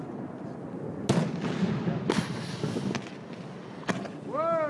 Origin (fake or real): real